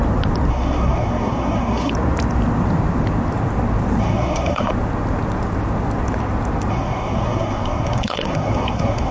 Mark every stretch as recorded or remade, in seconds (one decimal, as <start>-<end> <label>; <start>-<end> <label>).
0.0-0.5 recorded; 0.5-1.9 remade; 1.9-4.0 recorded; 4.0-4.7 remade; 4.7-6.7 recorded; 6.7-9.1 remade